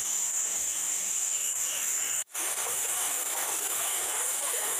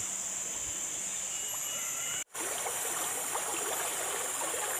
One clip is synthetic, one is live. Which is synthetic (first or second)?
first